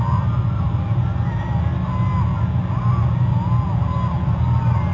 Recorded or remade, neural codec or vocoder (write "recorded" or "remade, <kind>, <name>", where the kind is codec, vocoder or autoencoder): recorded